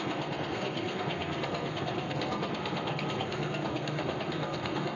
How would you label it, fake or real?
fake